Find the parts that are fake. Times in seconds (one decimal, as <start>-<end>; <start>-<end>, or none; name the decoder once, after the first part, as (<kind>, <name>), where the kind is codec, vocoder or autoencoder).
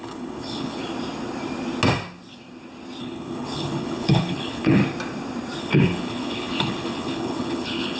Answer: 0.0-0.8 (codec, HILCodec); 3.0-4.8; 5.6-8.0